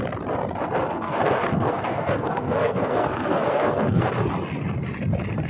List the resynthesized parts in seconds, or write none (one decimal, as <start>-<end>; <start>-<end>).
0.9-4.1